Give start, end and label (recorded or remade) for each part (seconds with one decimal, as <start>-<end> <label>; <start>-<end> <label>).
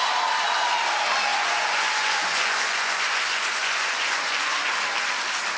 0.0-1.3 recorded; 1.3-4.7 remade; 4.7-5.6 recorded